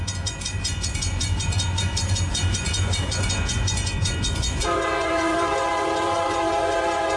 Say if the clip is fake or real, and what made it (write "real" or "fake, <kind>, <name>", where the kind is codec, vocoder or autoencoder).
fake, vocoder, Vocos